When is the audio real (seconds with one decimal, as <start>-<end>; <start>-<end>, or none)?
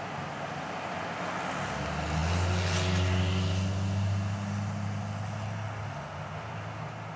0.0-7.2